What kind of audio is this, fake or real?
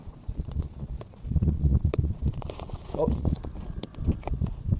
fake